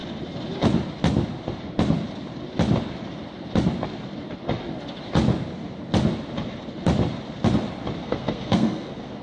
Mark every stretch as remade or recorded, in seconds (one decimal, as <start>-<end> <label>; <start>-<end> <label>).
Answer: 0.0-8.0 recorded; 8.0-9.2 remade